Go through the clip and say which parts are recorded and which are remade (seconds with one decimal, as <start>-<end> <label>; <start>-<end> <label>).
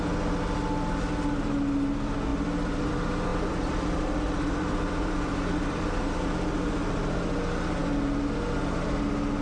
0.0-3.3 recorded; 3.3-5.8 remade; 5.8-9.4 recorded